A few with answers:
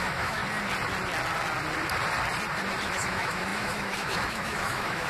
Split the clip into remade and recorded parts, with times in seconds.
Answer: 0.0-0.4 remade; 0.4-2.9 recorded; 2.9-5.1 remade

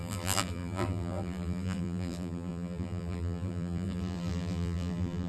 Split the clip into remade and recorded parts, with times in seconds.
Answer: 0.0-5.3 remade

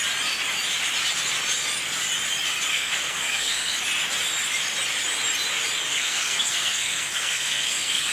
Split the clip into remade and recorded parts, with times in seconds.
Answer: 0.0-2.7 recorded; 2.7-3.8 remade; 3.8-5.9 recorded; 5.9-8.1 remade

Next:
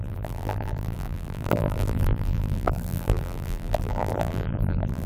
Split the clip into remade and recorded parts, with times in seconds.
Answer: 0.0-5.1 remade

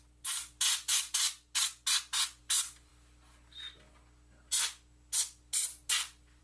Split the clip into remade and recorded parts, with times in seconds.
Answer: 0.0-1.6 remade; 1.6-2.4 recorded; 2.4-2.9 remade; 2.9-6.4 recorded

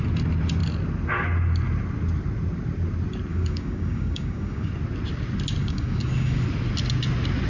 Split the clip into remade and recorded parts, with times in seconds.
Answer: 0.0-3.3 recorded; 3.3-4.7 remade; 4.7-5.6 recorded; 5.6-6.4 remade; 6.4-7.5 recorded